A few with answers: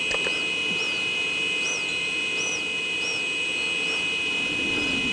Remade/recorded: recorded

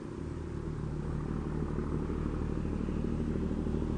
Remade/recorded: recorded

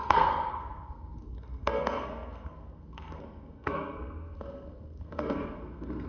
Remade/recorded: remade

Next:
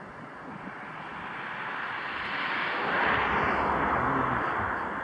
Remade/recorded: recorded